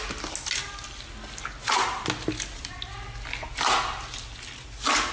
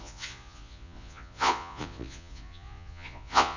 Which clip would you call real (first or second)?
first